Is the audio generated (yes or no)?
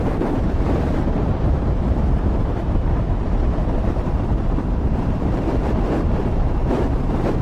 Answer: yes